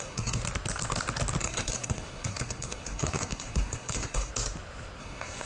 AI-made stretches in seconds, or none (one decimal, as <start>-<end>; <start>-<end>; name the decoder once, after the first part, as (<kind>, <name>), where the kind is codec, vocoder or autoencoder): 0.0-0.4 (codec, SNAC); 1.4-4.3; 5.0-5.5